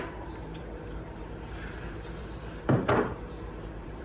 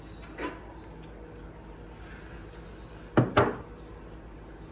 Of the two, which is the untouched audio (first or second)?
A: second